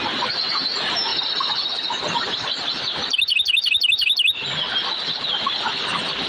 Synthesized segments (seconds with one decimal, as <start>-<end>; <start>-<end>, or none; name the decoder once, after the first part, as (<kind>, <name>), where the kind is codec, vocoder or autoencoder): none